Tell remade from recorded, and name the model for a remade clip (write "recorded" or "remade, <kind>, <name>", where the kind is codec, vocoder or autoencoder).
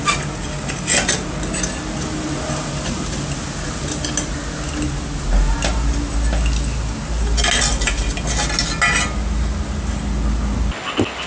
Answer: recorded